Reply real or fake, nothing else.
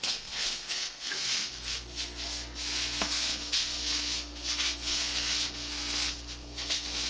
fake